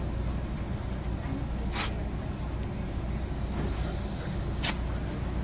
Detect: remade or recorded recorded